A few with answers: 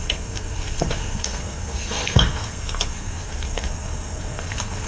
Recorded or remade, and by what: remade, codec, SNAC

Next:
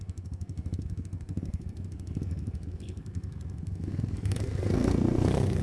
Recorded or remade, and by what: remade, codec, SNAC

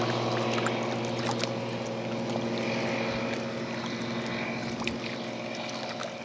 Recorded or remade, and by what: recorded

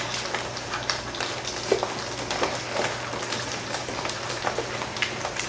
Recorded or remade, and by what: recorded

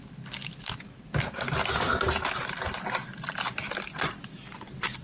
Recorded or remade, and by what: recorded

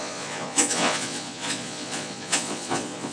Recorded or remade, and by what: remade, vocoder, Vocos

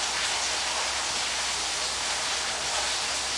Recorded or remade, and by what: recorded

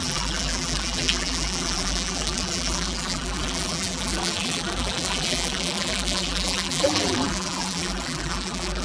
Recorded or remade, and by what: remade, vocoder, BigVGAN v2